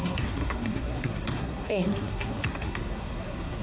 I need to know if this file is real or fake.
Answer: fake